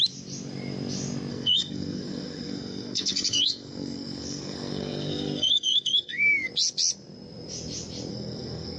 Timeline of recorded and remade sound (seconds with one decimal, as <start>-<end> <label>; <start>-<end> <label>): 0.0-1.3 recorded; 1.3-6.5 remade; 6.5-8.1 recorded; 8.1-8.8 remade